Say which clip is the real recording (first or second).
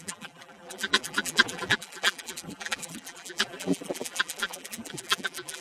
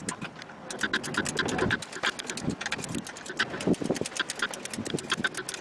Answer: second